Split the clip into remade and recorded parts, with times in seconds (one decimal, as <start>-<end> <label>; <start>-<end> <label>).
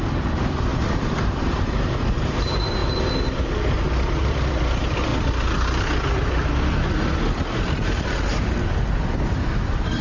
0.0-2.8 remade; 2.8-3.8 recorded; 3.8-5.1 remade; 5.1-7.6 recorded; 7.6-10.0 remade